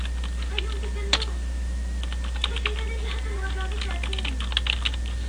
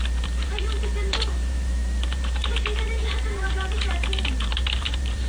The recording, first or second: first